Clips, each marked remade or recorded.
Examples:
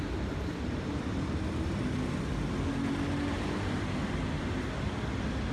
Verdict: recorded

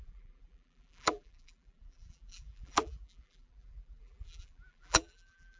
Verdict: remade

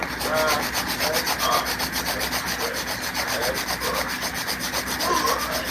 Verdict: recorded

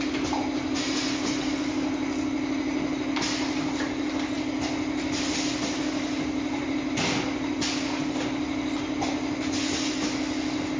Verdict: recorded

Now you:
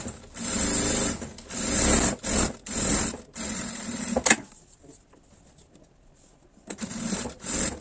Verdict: recorded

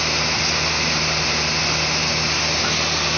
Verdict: recorded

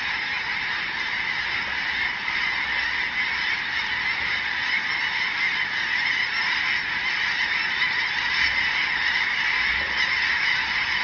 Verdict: recorded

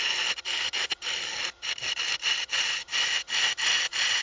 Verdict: recorded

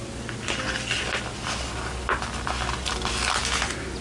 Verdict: recorded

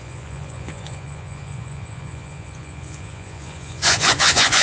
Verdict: remade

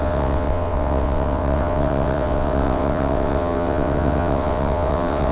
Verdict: remade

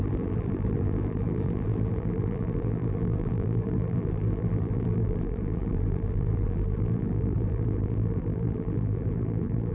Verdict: remade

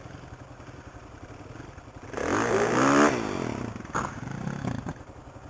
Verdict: recorded